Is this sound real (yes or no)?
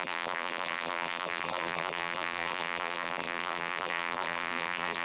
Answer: no